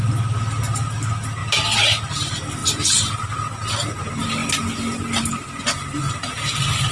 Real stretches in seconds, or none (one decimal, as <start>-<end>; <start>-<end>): 0.0-4.4; 5.6-6.9